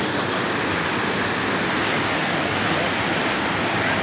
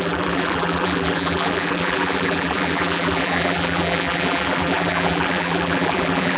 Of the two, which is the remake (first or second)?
second